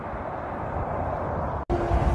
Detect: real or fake real